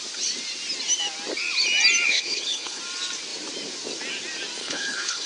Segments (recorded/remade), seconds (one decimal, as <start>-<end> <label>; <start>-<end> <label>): 0.0-2.1 recorded; 2.1-2.8 remade; 2.8-4.6 recorded; 4.6-5.3 remade